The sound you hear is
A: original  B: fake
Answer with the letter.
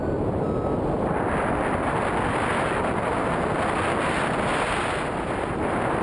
A